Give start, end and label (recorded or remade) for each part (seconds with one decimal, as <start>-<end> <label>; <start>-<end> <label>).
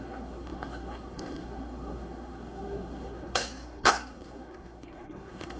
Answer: 0.0-5.6 remade